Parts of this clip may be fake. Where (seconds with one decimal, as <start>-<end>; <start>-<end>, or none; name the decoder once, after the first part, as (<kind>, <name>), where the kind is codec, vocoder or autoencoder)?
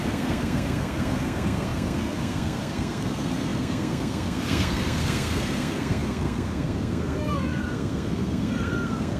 0.0-9.2 (codec, SNAC)